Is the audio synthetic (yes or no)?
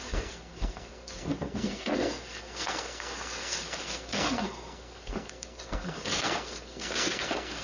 yes